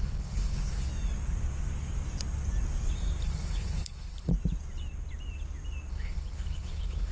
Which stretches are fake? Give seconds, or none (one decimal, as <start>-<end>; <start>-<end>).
0.0-0.9; 3.2-4.3; 5.9-7.1